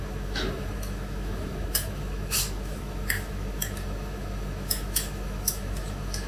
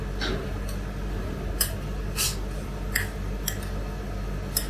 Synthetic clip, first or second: first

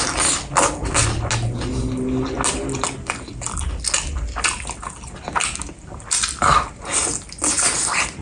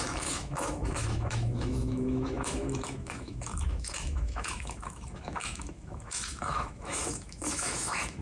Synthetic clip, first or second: second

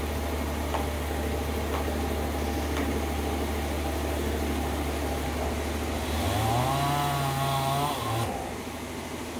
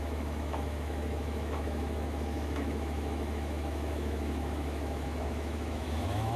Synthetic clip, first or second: second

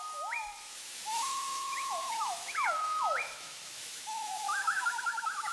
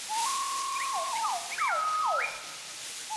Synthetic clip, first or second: first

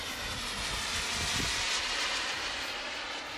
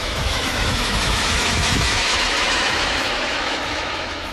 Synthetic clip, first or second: second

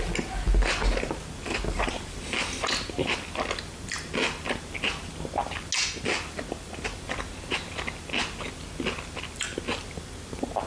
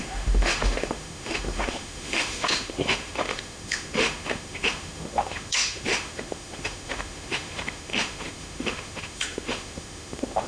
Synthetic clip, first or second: second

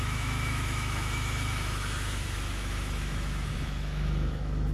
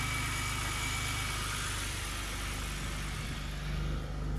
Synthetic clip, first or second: first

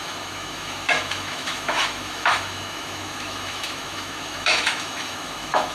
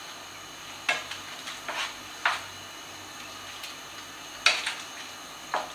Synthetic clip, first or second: first